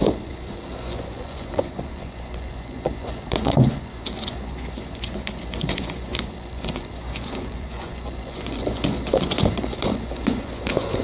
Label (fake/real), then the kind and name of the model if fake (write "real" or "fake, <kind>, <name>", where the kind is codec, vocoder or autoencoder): fake, vocoder, Vocos